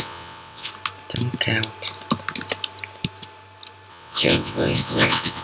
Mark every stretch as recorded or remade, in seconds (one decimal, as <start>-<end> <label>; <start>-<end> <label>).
0.0-0.7 remade; 0.7-3.9 recorded; 3.9-5.4 remade